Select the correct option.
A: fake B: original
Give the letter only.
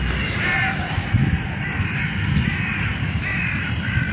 A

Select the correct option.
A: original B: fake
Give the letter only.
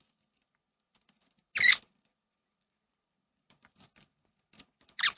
A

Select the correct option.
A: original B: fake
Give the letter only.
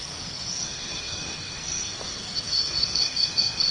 B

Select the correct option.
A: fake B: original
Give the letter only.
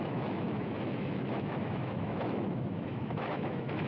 A